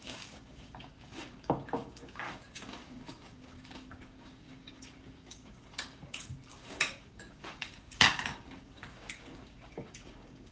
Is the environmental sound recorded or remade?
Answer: remade